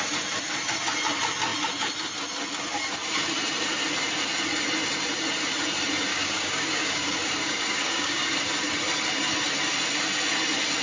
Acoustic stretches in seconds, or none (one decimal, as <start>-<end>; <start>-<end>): 0.0-6.1; 8.3-10.8